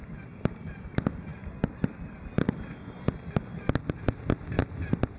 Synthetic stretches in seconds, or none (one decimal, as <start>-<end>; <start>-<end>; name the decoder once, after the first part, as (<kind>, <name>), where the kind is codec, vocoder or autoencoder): none